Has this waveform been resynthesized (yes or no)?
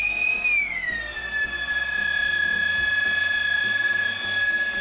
no